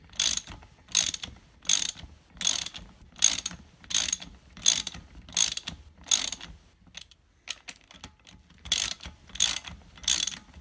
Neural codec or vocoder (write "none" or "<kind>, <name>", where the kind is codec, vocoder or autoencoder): none